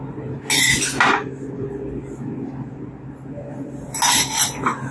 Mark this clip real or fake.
real